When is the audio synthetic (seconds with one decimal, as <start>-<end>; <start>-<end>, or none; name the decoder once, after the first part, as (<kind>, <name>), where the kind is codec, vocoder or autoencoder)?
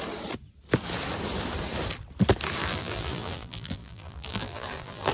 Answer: 2.6-5.1 (vocoder, BigVGAN v2)